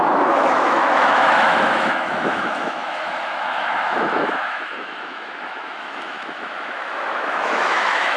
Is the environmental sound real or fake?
fake